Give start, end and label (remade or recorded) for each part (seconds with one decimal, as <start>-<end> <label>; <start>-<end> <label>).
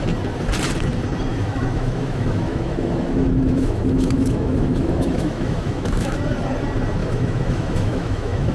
0.0-1.3 recorded; 1.3-6.2 remade; 6.2-7.0 recorded; 7.0-8.5 remade